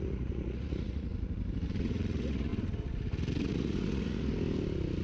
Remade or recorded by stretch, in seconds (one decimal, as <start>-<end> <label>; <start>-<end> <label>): 0.0-1.1 remade; 1.1-1.8 recorded; 1.8-2.5 remade; 2.5-3.4 recorded; 3.4-4.3 remade; 4.3-5.0 recorded